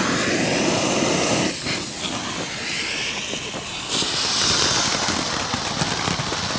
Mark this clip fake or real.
real